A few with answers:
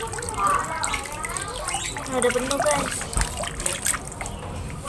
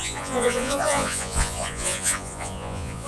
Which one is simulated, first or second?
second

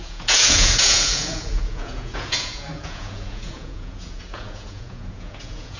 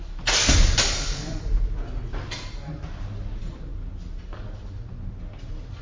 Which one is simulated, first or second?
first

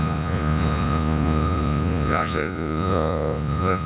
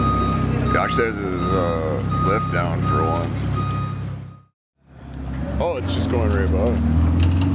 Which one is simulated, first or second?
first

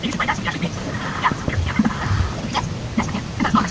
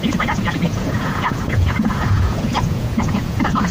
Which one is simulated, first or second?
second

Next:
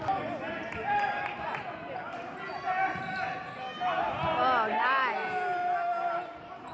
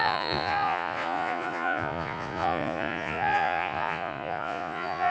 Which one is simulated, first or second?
second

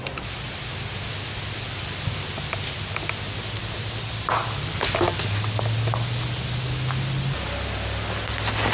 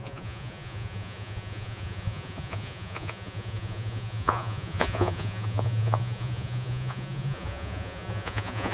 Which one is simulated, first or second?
second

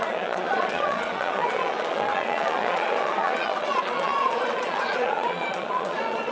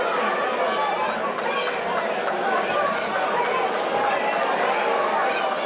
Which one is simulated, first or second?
first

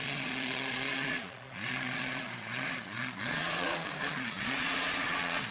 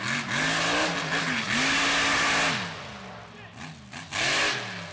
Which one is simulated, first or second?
first